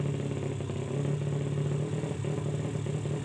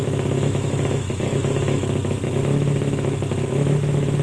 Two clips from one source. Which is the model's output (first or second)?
second